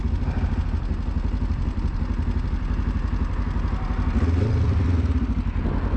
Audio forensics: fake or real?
real